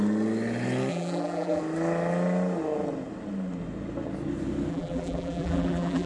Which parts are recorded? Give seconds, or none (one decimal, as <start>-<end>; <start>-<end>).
0.0-0.9; 1.6-4.7